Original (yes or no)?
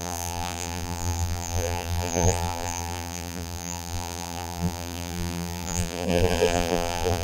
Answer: no